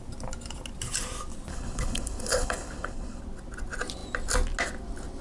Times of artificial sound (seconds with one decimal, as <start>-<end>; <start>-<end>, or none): 1.5-3.2